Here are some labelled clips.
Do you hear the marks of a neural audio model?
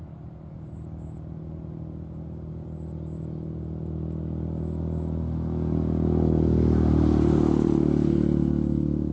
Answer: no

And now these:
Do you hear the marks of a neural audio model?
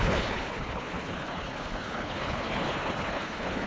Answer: yes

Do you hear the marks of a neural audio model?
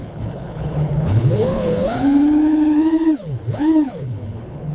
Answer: yes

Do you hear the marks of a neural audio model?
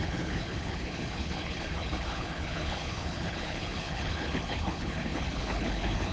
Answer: yes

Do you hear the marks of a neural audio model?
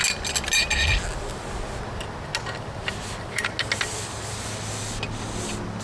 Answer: no